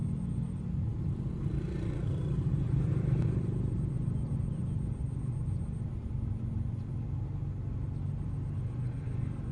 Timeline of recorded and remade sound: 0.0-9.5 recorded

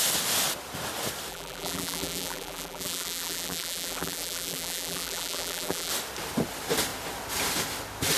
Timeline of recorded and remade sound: 0.0-1.3 recorded; 1.3-5.9 remade; 5.9-8.2 recorded

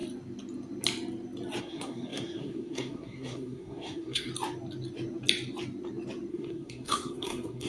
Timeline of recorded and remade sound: 0.0-1.6 recorded; 1.6-4.3 remade; 4.3-6.3 recorded; 6.3-7.7 remade

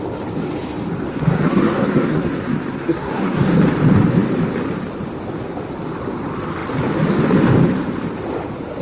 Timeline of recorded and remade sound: 0.0-1.1 recorded; 1.1-3.4 remade; 3.4-8.8 recorded

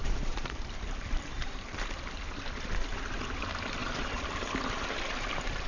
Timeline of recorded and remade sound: 0.0-2.0 remade; 2.0-3.8 recorded; 3.8-4.5 remade; 4.5-5.7 recorded